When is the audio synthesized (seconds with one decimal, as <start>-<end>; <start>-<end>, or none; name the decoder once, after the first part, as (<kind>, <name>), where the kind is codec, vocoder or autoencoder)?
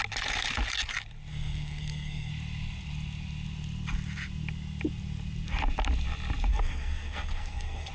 1.3-2.3 (codec, SNAC); 6.5-7.9